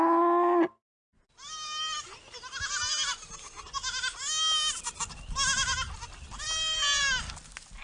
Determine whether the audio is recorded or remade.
recorded